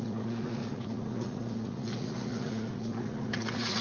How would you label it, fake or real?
fake